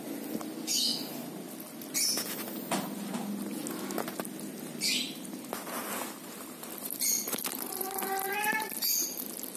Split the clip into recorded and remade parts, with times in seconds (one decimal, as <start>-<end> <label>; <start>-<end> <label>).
0.0-0.9 recorded; 0.9-1.8 remade; 1.8-4.5 recorded; 4.5-9.2 remade; 9.2-9.6 recorded